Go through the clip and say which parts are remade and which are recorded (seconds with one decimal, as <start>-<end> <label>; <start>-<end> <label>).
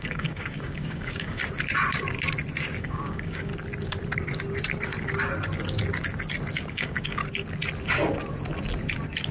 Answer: 0.0-1.4 remade; 1.4-2.8 recorded; 2.8-3.5 remade; 3.5-6.7 recorded; 6.7-7.2 remade; 7.2-9.3 recorded